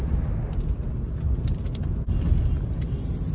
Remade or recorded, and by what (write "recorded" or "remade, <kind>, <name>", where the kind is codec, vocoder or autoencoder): recorded